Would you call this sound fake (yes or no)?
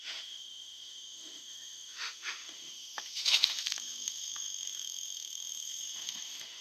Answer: yes